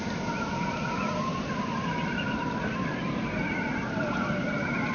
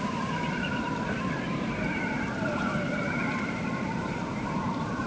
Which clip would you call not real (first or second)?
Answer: second